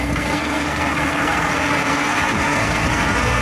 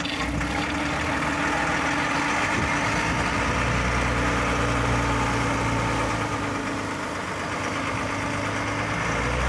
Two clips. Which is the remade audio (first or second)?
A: first